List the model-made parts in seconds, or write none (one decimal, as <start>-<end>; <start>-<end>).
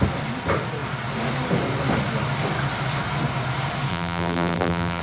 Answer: 3.9-5.0